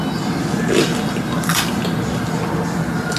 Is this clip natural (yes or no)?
yes